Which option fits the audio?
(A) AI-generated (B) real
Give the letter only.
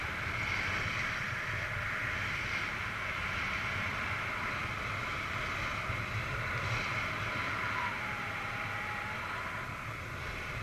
B